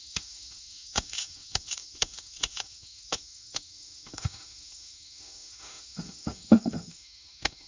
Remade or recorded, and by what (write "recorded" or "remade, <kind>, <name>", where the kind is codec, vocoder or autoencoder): remade, autoencoder, DAC-VAE